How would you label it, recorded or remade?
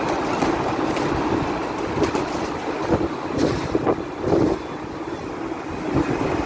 recorded